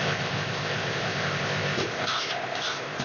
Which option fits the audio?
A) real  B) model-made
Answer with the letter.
B